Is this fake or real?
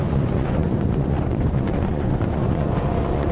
fake